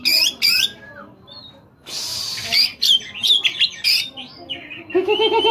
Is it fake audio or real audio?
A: real